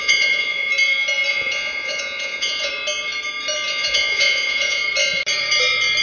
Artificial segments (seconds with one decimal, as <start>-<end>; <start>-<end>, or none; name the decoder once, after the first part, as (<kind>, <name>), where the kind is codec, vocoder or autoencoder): 0.0-0.7 (vocoder, Vocos); 1.3-2.7; 3.7-4.8